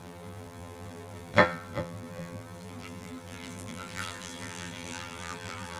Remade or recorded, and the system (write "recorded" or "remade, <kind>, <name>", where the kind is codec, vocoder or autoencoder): remade, vocoder, BigVGAN v2